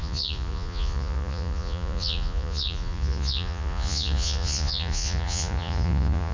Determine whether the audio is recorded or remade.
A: remade